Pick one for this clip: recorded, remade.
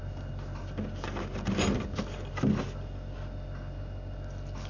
recorded